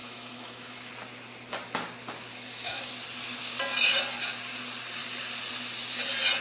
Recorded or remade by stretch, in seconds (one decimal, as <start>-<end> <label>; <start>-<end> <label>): 0.0-0.9 remade; 0.9-2.3 recorded; 2.3-2.9 remade; 2.9-6.4 recorded